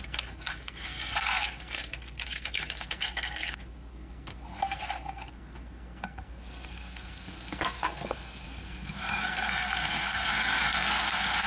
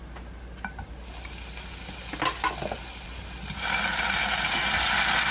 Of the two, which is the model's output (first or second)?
first